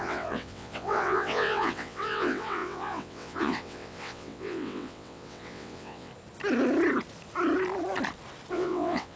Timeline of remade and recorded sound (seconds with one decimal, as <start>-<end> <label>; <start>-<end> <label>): 0.0-6.1 remade; 6.1-8.5 recorded; 8.5-9.2 remade